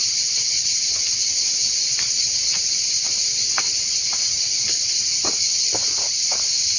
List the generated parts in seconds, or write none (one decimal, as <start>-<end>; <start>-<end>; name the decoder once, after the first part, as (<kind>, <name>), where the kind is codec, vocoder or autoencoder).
5.8-6.8 (vocoder, BigVGAN v2)